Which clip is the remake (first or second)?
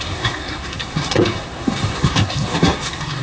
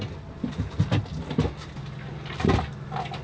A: first